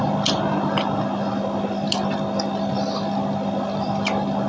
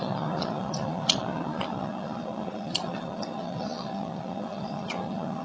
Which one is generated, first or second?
second